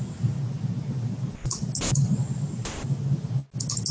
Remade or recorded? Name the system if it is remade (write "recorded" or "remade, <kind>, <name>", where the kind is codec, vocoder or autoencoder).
recorded